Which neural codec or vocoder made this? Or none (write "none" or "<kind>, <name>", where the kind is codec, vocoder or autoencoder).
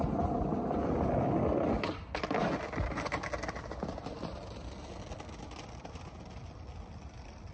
none